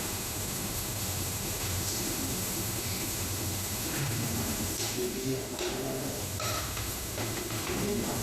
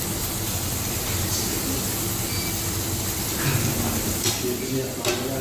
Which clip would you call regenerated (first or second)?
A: first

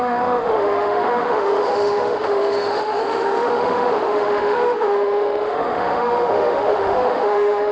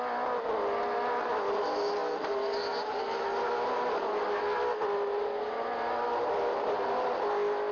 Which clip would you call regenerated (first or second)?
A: first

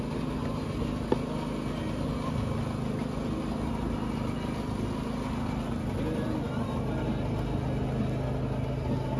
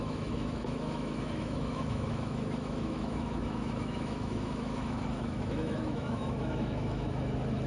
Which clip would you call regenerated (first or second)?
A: second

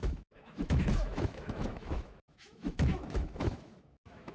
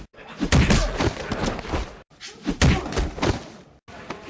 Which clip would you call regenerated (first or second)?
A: first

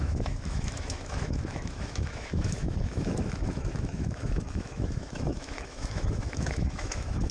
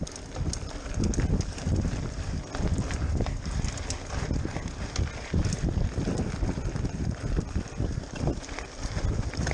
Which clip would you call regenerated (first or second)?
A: first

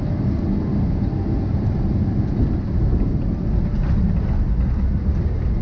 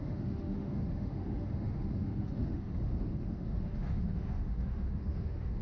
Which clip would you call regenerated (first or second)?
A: second